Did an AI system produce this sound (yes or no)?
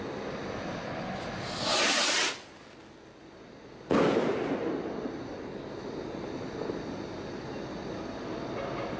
no